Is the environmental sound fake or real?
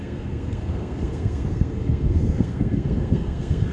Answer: fake